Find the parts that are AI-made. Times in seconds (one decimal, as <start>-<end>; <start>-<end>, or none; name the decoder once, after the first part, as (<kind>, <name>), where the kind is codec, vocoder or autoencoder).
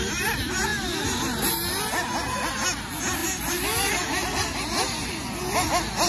none